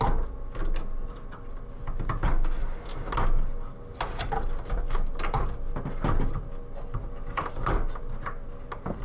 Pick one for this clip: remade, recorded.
recorded